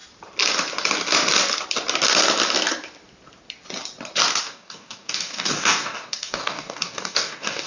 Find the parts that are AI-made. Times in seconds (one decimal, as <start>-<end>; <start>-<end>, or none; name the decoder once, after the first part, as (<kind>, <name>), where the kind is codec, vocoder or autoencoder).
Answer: 4.4-7.7 (codec, DAC)